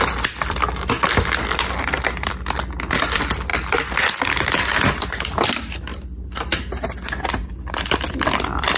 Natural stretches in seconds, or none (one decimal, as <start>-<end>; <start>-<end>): 6.5-8.0